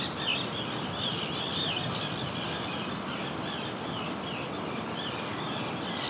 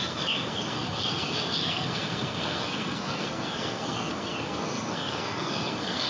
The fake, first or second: second